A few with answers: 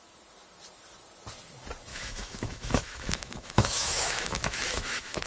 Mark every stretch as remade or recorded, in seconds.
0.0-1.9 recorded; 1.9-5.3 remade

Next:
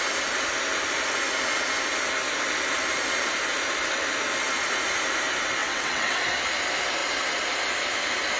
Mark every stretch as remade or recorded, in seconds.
0.0-5.6 recorded; 5.6-6.2 remade; 6.2-8.4 recorded